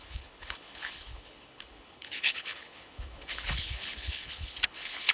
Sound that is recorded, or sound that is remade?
remade